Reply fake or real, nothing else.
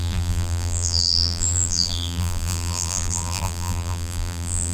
fake